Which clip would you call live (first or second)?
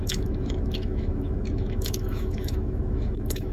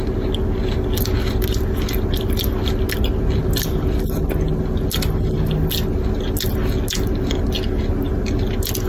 second